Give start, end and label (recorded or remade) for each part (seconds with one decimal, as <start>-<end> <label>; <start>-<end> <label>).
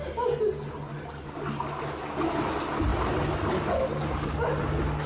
0.0-5.1 recorded